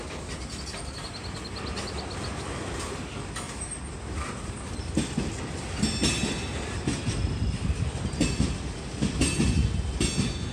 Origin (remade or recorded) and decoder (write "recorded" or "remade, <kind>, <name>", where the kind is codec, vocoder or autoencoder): recorded